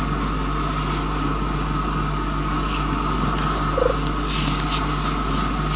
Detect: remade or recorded recorded